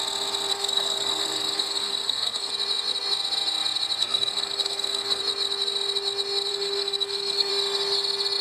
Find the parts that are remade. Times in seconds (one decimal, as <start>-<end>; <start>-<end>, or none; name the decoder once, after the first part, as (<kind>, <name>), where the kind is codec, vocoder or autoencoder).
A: 0.5-2.5 (codec, SNAC); 4.0-5.2; 6.5-7.5